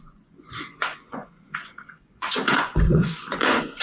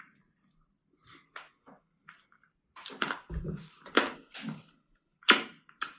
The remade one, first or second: first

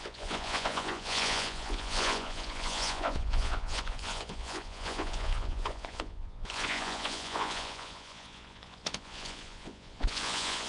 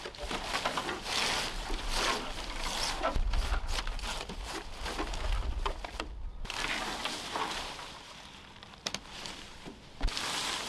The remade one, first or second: first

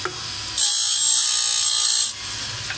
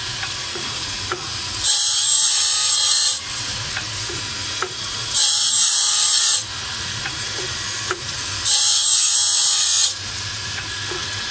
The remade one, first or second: second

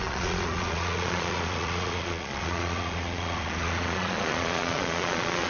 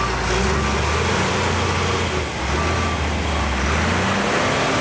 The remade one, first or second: first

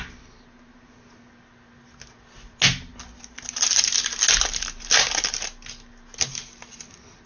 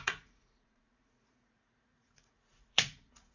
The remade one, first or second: second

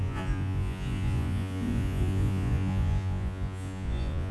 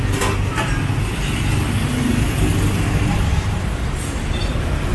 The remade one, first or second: first